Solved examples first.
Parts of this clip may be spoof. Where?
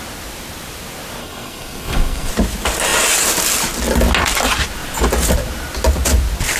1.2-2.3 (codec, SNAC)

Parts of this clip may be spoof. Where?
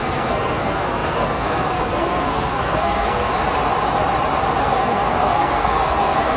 0.0-3.3 (codec, SNAC); 4.6-6.4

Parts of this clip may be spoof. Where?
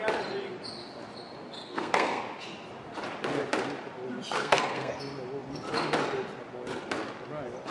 1.6-2.2 (codec, SNAC); 4.4-5.0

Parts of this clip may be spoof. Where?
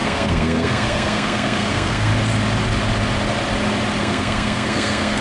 0.0-2.1 (codec, SNAC); 4.0-5.2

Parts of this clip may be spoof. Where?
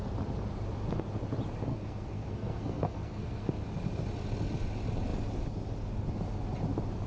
1.7-3.5 (codec, SNAC)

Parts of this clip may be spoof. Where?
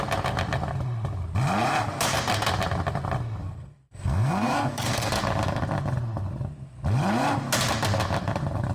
3.4-5.1 (codec, SNAC)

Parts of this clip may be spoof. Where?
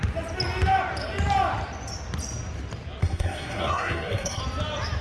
3.0-4.4 (codec, SNAC)